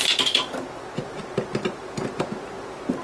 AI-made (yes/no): no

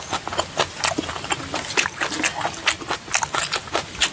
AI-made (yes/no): no